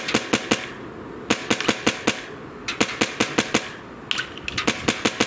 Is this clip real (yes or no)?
yes